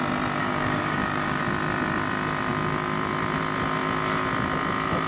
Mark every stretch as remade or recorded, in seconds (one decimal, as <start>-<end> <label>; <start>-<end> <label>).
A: 0.0-0.4 recorded; 0.4-1.4 remade; 1.4-5.1 recorded

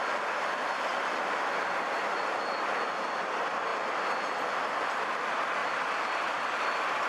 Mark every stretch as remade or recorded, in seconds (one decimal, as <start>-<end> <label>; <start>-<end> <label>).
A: 0.0-7.1 recorded

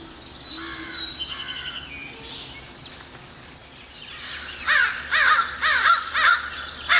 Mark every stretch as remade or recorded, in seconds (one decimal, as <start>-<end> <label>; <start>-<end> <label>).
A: 0.0-7.0 recorded

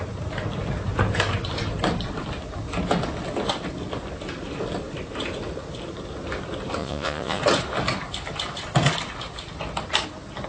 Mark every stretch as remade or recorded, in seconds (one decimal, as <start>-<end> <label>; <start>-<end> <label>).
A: 0.0-6.8 recorded; 6.8-7.4 remade; 7.4-10.5 recorded